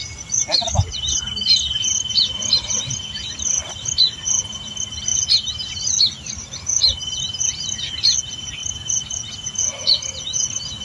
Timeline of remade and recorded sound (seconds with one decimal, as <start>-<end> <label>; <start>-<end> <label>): 0.0-8.6 recorded; 8.6-9.2 remade; 9.2-10.8 recorded